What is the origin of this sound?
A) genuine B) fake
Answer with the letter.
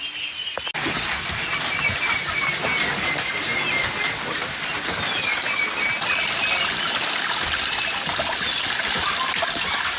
A